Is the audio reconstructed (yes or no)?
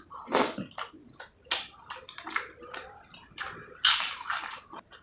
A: no